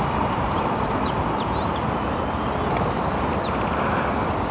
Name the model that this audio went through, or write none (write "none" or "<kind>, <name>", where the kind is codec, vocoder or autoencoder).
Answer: none